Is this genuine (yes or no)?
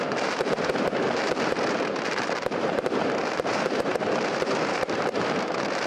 no